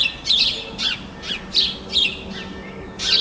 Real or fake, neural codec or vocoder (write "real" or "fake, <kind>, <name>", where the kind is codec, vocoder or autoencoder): real